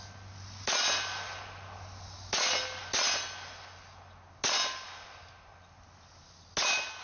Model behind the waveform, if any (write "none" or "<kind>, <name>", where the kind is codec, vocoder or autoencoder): none